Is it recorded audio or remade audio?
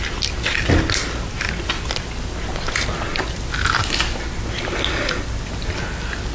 recorded